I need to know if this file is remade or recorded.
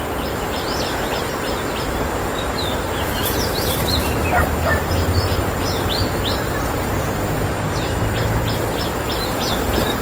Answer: remade